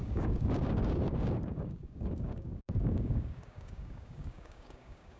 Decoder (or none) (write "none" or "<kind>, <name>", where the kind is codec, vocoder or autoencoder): codec, DAC